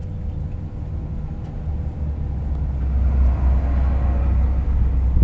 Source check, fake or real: real